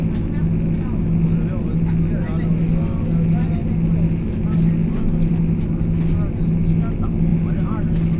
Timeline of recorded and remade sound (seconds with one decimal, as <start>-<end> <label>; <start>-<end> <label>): 0.0-8.2 recorded